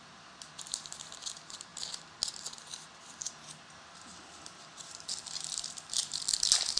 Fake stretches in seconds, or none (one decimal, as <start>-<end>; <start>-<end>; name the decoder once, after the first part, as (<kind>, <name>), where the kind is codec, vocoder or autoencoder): 4.7-6.2 (vocoder, BigVGAN v2)